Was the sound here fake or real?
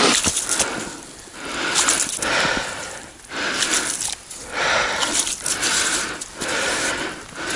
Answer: real